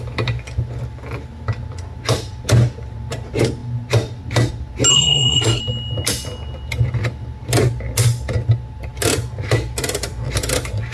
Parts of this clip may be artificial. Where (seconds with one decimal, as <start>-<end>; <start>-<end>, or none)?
4.9-5.6